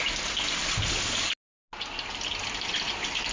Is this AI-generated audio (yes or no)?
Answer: no